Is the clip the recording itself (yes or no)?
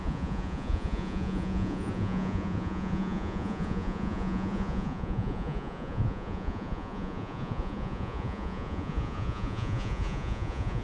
no